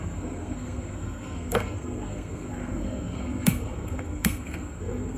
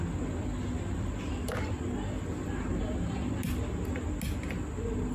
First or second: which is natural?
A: second